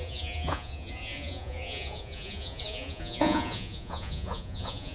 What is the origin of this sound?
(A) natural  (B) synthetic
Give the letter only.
B